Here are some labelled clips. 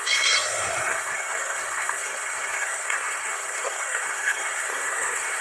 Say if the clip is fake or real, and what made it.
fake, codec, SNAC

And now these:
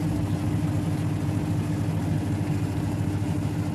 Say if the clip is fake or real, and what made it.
real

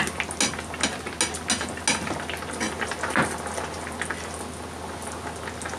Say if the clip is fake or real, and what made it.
real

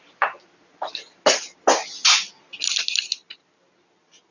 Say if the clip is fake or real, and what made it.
real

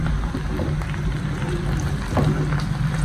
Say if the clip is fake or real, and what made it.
real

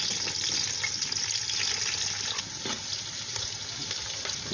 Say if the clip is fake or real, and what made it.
real